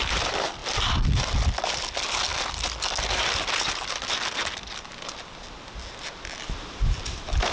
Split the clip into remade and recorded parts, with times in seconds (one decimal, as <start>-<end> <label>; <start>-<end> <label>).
0.0-7.5 recorded